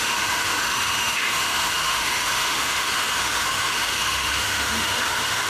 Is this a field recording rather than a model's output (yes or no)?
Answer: no